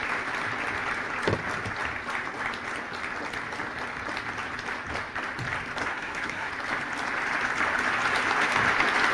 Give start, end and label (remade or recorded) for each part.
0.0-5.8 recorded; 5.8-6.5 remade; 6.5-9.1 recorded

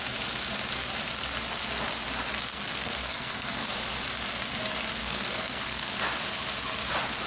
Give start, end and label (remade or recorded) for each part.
0.0-2.5 recorded; 2.5-3.7 remade; 3.7-5.0 recorded; 5.0-5.9 remade; 5.9-7.3 recorded

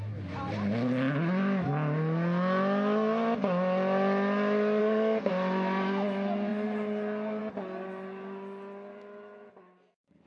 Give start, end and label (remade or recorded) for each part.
0.0-4.8 recorded; 4.8-5.3 remade; 5.3-10.3 recorded

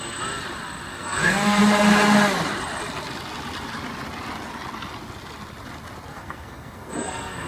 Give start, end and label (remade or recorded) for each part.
0.0-0.9 recorded; 0.9-1.6 remade; 1.6-6.1 recorded; 6.1-7.5 remade

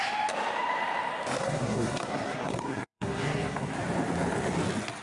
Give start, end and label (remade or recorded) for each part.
0.0-1.4 recorded; 1.4-3.7 remade; 3.7-5.0 recorded

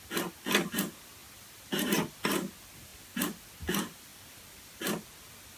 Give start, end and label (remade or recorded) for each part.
0.0-5.6 recorded

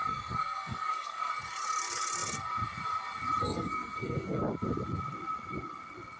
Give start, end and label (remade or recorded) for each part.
0.0-1.3 remade; 1.3-3.4 recorded; 3.4-4.4 remade; 4.4-6.2 recorded